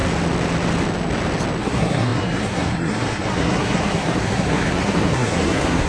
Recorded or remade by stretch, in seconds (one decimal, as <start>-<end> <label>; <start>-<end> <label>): 0.0-1.6 recorded; 1.6-5.9 remade